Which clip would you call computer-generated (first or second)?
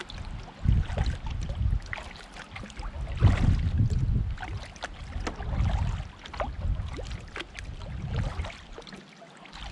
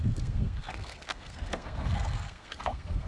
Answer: second